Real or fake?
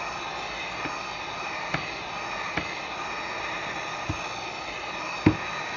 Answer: real